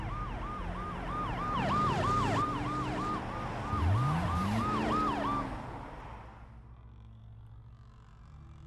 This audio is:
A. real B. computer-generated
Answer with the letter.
A